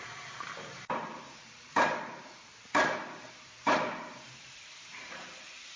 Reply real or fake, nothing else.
fake